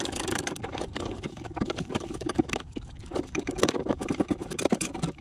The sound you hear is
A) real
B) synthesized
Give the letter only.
B